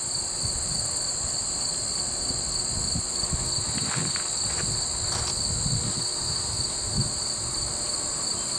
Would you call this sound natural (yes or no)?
yes